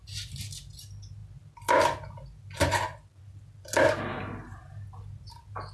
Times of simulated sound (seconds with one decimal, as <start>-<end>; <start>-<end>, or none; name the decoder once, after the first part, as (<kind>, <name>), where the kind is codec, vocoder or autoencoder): none